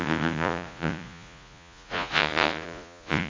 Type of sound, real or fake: fake